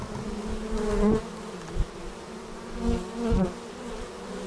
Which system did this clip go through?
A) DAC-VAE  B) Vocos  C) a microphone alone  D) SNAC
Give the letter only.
C